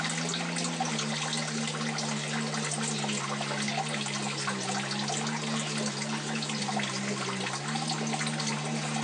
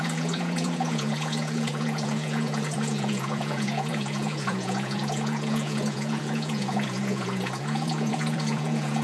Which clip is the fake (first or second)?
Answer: second